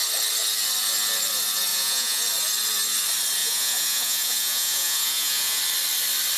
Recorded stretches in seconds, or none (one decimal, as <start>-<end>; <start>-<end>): 0.0-1.7; 2.2-3.4; 5.6-6.4